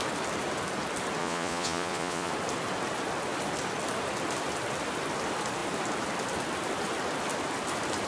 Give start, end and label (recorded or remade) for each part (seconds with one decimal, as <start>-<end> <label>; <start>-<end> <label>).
0.0-1.2 recorded; 1.2-2.3 remade; 2.3-8.1 recorded